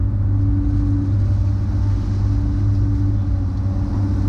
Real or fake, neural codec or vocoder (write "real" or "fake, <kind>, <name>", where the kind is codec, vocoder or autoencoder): real